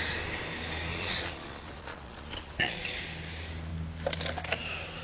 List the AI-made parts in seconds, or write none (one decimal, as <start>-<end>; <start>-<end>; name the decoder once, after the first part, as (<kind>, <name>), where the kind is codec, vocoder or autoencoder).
0.9-3.0 (vocoder, Vocos)